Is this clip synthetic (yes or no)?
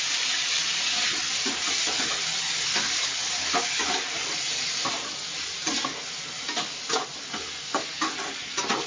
no